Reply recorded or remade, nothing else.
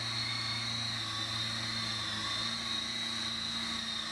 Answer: recorded